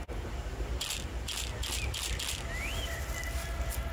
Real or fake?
real